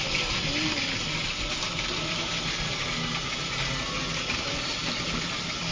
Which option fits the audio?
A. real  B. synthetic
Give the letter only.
A